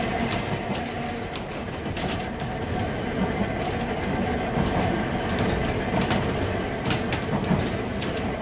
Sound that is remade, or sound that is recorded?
recorded